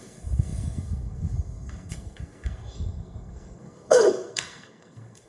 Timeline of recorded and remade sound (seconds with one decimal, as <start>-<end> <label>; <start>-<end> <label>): 0.0-5.3 remade